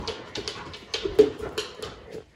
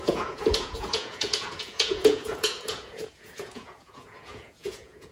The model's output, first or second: second